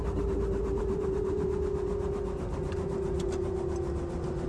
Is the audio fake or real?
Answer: real